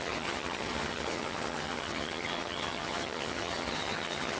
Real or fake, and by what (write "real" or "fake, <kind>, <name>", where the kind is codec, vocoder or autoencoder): fake, vocoder, HiFi-GAN